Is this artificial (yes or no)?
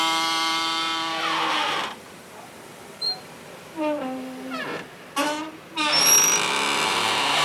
yes